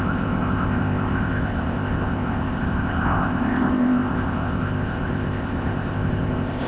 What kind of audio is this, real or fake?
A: fake